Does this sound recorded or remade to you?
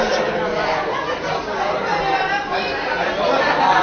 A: recorded